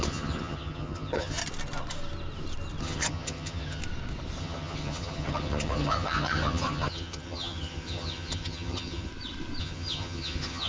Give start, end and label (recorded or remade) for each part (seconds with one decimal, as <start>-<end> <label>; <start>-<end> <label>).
0.0-1.4 remade; 1.4-2.8 recorded; 2.8-3.8 remade; 3.8-4.4 recorded; 4.4-9.1 remade; 9.1-9.6 recorded; 9.6-10.7 remade